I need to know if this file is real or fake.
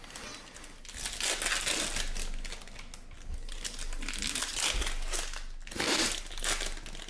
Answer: real